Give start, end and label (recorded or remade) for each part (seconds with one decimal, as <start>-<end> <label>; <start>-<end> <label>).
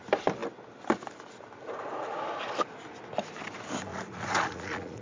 0.0-3.9 recorded; 3.9-5.0 remade